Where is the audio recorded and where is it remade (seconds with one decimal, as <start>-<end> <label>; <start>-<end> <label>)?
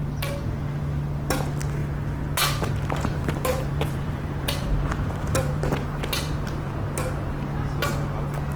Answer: 0.0-3.1 recorded; 3.1-6.7 remade; 6.7-8.6 recorded